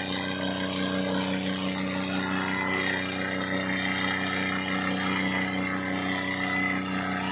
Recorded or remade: recorded